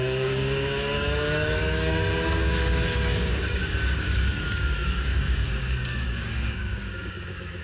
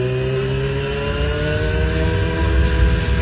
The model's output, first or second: first